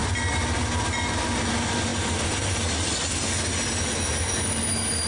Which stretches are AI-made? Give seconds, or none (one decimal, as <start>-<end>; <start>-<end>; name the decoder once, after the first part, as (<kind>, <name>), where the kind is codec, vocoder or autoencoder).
none